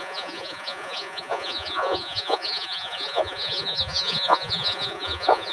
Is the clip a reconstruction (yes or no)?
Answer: yes